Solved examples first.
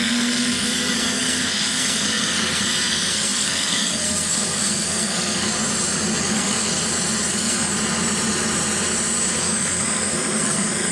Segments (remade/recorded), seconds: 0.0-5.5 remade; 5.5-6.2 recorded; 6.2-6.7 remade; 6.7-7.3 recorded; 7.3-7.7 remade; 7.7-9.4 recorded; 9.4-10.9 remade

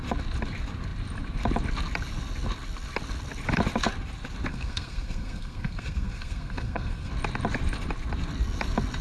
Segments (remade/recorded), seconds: 0.0-4.5 recorded; 4.5-7.1 remade; 7.1-9.0 recorded

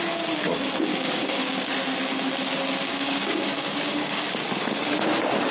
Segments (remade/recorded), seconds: 0.0-0.9 recorded; 0.9-1.7 remade; 1.7-2.9 recorded; 2.9-4.2 remade; 4.2-5.5 recorded

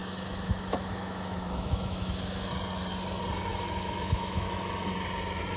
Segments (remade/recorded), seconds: 0.0-2.5 remade; 2.5-3.5 recorded; 3.5-4.5 remade; 4.5-5.6 recorded

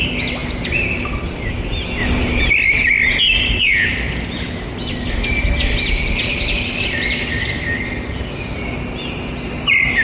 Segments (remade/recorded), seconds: 0.0-10.0 recorded

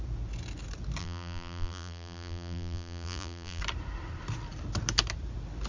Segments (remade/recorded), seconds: 0.0-1.0 recorded; 1.0-3.6 remade; 3.6-5.7 recorded

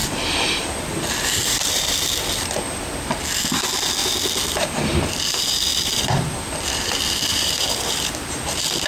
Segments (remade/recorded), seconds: 0.0-2.3 remade; 2.3-5.7 recorded; 5.7-8.3 remade; 8.3-8.9 recorded